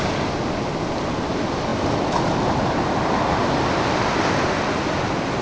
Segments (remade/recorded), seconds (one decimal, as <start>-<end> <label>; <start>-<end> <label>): 0.0-5.4 recorded

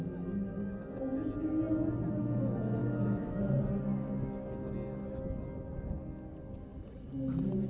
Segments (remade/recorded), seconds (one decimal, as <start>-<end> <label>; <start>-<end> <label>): 0.0-2.8 recorded; 2.8-3.4 remade; 3.4-7.7 recorded